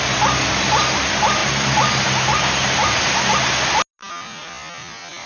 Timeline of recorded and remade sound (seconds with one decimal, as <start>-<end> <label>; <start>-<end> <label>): 0.0-5.3 recorded